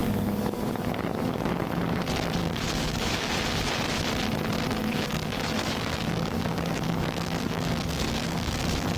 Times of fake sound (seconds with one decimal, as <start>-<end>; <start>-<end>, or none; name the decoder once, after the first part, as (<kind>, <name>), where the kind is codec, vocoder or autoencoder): 0.0-2.0 (codec, DAC); 2.4-3.3; 4.9-8.6